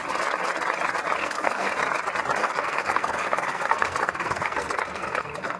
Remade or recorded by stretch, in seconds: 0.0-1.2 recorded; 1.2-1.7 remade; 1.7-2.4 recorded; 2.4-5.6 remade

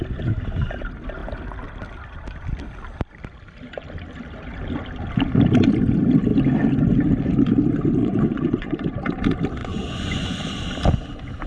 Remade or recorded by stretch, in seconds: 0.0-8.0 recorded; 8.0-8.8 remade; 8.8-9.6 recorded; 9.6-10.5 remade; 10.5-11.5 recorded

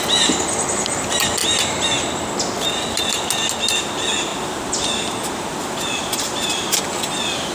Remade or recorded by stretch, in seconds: 0.0-7.5 recorded

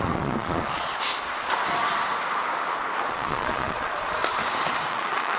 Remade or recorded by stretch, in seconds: 0.0-0.9 remade; 0.9-3.1 recorded; 3.1-4.2 remade; 4.2-4.9 recorded; 4.9-5.4 remade